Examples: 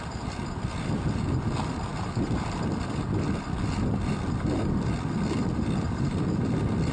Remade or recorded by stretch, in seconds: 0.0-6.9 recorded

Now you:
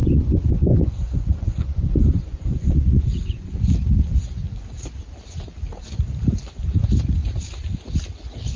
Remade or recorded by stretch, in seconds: 0.0-3.6 remade; 3.6-8.6 recorded

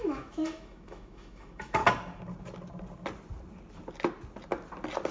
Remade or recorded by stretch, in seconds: 0.0-1.8 remade; 1.8-5.1 recorded

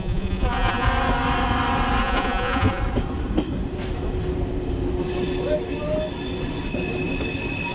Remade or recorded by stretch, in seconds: 0.0-0.9 remade; 0.9-2.0 recorded; 2.0-2.8 remade; 2.8-7.7 recorded

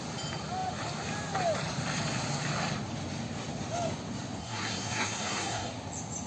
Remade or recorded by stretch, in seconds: 0.0-4.4 recorded; 4.4-5.7 remade; 5.7-6.3 recorded

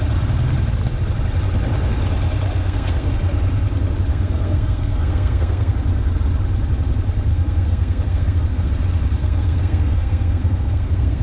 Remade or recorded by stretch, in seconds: 0.0-2.6 recorded; 2.6-3.1 remade; 3.1-4.1 recorded; 4.1-5.7 remade; 5.7-7.3 recorded; 7.3-8.7 remade; 8.7-9.2 recorded; 9.2-11.2 remade

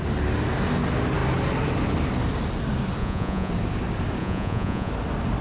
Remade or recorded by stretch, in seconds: 0.0-3.0 recorded; 3.0-3.5 remade; 3.5-4.2 recorded; 4.2-4.9 remade; 4.9-5.4 recorded